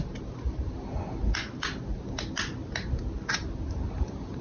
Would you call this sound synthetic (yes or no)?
no